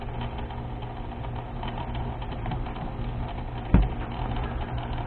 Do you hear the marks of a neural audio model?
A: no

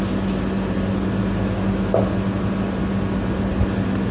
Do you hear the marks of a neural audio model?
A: no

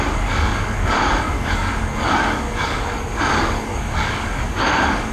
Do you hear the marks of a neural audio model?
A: yes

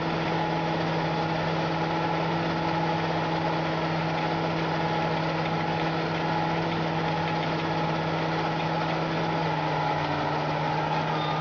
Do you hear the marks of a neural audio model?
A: no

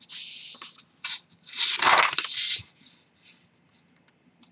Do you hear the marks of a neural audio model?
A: no